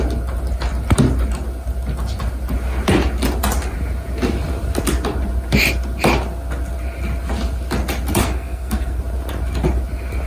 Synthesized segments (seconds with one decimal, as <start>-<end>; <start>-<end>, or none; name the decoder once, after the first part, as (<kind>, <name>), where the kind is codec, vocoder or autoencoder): 8.2-9.0 (codec, SNAC)